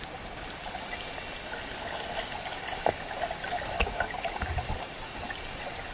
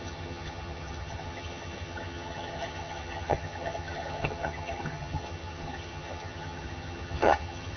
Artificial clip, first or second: second